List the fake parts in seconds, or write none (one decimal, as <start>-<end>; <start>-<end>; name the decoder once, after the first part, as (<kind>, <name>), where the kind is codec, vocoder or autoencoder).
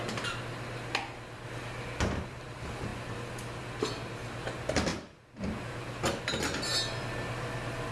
none